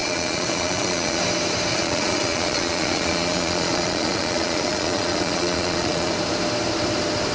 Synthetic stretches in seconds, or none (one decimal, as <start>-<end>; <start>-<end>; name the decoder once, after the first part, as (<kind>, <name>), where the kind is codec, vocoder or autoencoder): 0.0-1.2 (vocoder, Vocos); 1.7-6.1